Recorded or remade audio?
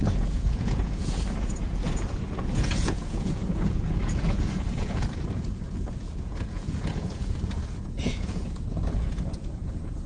remade